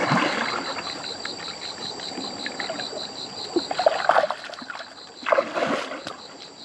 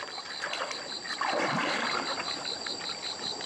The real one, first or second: second